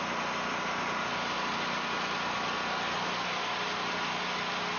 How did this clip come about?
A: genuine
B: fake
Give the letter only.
A